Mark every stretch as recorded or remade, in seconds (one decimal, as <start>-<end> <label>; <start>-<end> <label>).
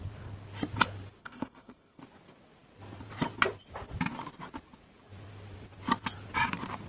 0.0-1.2 recorded; 1.2-2.0 remade; 2.0-6.9 recorded